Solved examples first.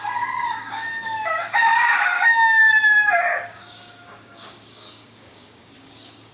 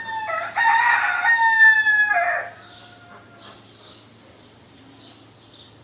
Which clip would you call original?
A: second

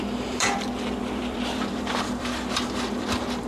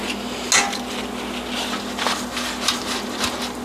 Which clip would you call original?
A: second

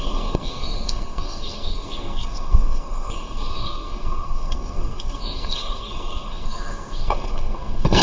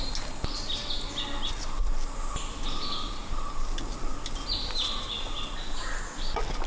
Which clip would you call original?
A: second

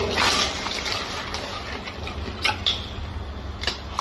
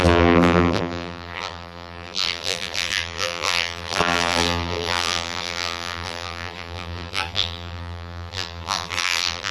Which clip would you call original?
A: first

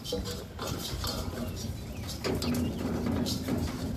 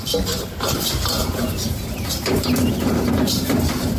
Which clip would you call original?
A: first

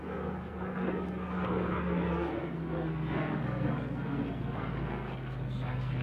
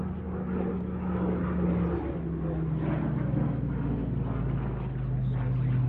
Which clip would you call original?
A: second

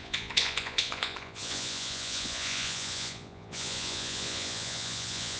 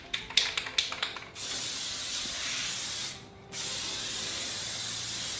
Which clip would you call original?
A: second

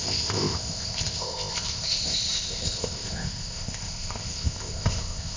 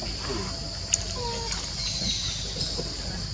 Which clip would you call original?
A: second